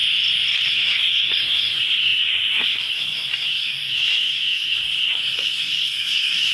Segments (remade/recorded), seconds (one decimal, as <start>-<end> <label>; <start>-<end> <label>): 0.0-0.7 recorded; 0.7-6.5 remade